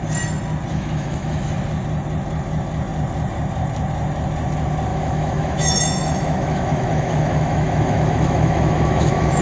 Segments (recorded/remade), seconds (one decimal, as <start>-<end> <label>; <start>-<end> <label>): 0.0-0.7 recorded; 0.7-1.5 remade; 1.5-4.9 recorded; 4.9-9.4 remade